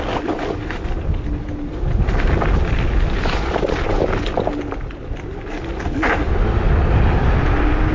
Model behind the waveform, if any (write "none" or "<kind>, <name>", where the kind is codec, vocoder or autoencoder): none